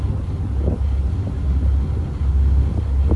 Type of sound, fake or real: real